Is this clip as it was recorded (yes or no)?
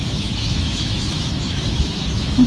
no